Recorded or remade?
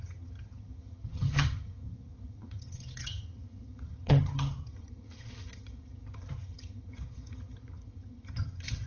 remade